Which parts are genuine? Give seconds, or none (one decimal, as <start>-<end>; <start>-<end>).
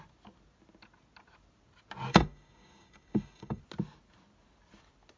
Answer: 0.0-2.1; 3.6-5.2